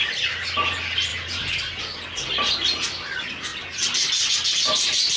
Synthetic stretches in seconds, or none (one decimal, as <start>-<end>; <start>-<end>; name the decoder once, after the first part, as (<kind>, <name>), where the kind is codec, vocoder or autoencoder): none